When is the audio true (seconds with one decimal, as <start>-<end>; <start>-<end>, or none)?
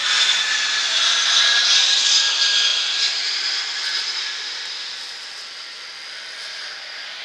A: 1.3-2.7